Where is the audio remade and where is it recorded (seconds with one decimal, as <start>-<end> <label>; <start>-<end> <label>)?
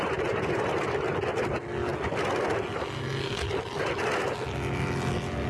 0.0-5.5 recorded